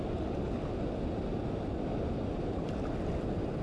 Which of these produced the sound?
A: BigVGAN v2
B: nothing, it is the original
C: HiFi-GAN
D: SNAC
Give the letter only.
B